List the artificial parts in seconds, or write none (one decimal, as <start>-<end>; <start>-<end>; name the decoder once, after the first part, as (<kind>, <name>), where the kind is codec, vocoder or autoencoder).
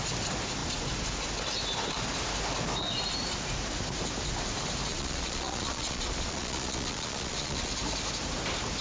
4.9-7.7 (vocoder, Vocos)